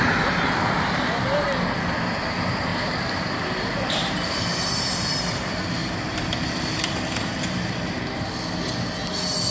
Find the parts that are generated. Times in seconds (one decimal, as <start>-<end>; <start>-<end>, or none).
2.7-4.5; 5.8-8.2